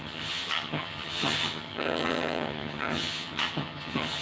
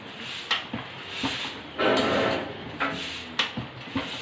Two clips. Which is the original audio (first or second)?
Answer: second